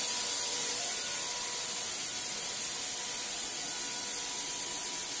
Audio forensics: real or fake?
real